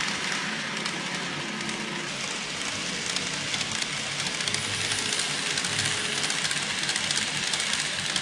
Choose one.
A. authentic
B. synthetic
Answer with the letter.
A